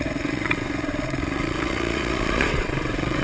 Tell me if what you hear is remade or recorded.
remade